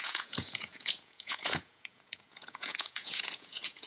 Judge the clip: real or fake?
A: fake